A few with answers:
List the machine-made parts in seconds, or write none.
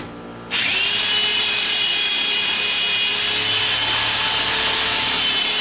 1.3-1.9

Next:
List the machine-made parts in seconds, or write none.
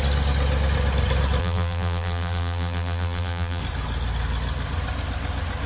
1.4-3.6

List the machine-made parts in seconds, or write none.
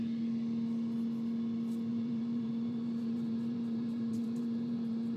1.9-5.2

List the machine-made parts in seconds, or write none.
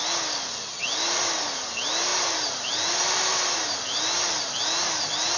none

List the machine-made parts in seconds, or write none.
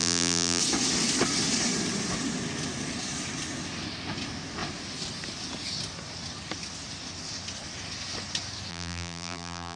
0.0-0.6; 8.7-9.8